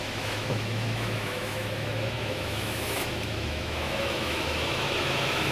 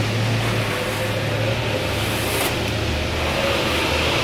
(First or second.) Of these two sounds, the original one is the second